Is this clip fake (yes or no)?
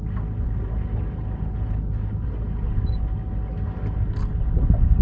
no